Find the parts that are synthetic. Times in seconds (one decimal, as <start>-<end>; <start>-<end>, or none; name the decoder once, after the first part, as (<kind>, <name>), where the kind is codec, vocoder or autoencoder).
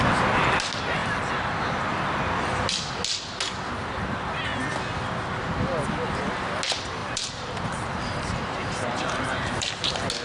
1.0-1.8 (vocoder, BigVGAN v2); 7.0-9.7